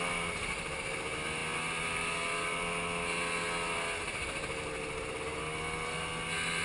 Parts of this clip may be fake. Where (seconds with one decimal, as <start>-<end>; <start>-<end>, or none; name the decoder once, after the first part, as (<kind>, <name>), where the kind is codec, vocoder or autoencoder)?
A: none